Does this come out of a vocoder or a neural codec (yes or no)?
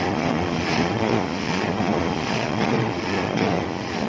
yes